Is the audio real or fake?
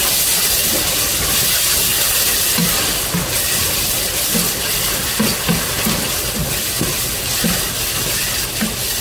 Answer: real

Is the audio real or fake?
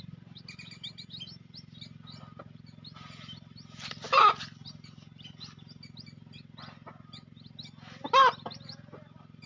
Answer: real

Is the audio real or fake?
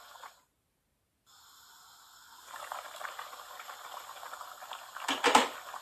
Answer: real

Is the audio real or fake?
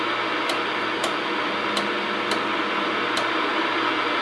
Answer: real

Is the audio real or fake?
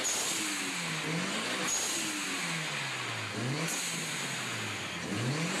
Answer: real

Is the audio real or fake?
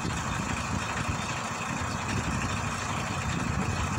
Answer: real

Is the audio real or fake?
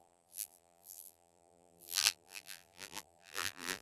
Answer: fake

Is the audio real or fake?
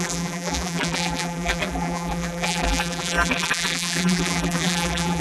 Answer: fake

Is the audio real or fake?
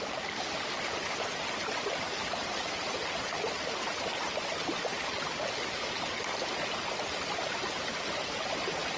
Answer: real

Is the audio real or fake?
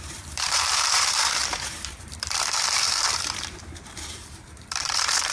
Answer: fake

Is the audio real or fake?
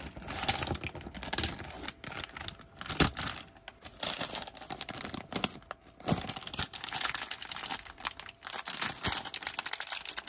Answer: real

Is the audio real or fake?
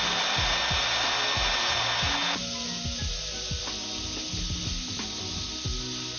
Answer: real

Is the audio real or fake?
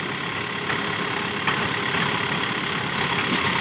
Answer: real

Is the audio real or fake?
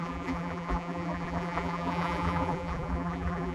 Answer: fake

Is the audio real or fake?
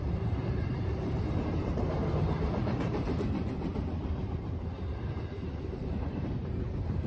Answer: fake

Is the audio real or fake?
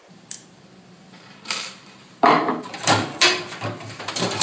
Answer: fake